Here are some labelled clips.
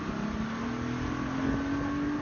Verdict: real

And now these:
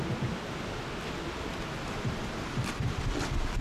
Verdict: real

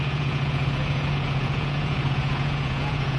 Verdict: fake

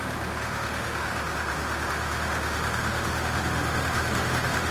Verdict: fake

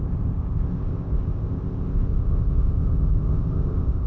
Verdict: fake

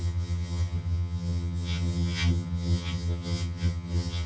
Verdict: fake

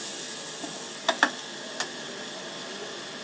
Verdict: real